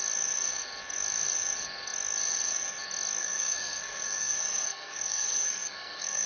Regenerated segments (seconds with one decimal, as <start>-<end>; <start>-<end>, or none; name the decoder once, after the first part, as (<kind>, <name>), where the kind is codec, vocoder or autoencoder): 3.2-6.3 (codec, SNAC)